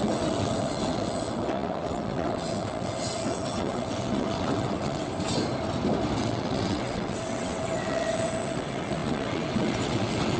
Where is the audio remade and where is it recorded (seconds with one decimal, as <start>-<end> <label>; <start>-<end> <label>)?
0.0-5.1 remade; 5.1-6.2 recorded; 6.2-10.4 remade